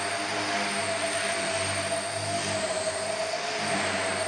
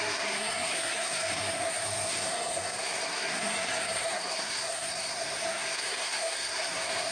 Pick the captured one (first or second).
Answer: first